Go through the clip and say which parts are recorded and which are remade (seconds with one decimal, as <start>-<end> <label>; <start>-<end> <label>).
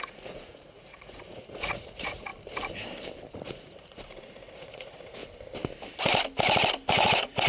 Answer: 0.0-2.3 remade; 2.3-3.3 recorded; 3.3-5.2 remade; 5.2-6.9 recorded; 6.9-7.5 remade